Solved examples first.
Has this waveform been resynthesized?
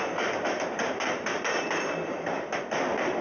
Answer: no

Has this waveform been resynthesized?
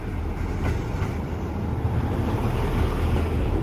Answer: no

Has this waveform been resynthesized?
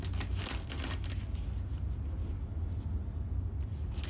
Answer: no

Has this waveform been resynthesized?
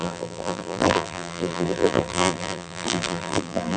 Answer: yes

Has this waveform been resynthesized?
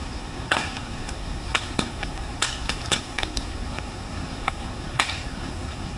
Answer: yes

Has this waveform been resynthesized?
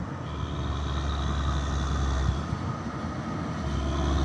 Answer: no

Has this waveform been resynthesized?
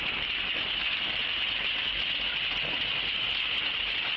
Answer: no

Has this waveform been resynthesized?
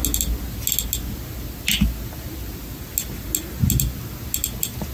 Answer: no